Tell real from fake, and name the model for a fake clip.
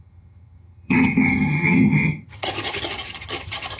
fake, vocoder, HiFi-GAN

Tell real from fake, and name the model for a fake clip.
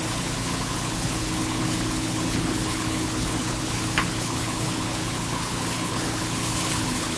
fake, codec, HILCodec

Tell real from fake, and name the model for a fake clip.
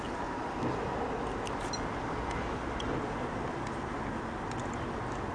real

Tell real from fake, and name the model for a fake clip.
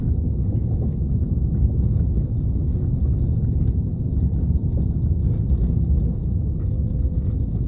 real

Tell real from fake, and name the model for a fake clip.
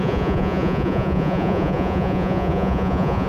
fake, vocoder, Vocos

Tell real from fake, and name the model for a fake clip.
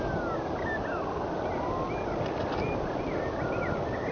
real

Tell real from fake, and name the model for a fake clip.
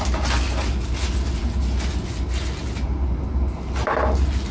real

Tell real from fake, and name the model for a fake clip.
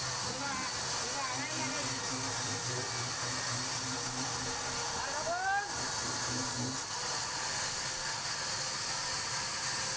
real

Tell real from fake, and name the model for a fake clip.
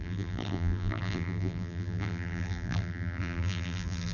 fake, vocoder, BigVGAN v2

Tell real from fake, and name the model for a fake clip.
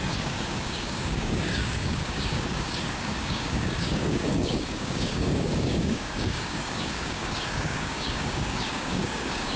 fake, codec, DAC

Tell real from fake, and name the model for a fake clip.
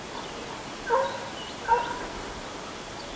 real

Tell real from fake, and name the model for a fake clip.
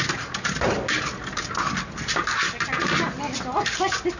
real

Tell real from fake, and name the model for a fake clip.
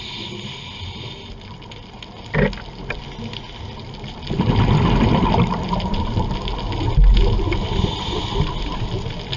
real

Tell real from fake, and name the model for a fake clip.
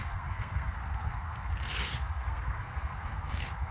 fake, codec, SNAC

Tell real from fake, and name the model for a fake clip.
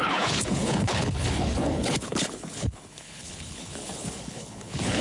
fake, codec, HILCodec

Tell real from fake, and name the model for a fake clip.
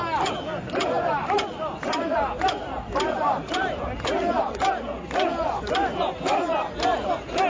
real